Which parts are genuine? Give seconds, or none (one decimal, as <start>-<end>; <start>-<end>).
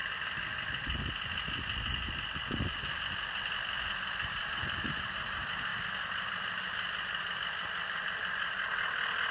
0.0-9.3